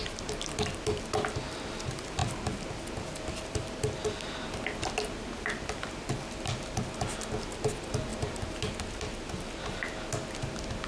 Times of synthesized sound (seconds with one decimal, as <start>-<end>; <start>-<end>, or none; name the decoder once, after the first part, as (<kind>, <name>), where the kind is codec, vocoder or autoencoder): 8.1-8.7 (vocoder, BigVGAN v2)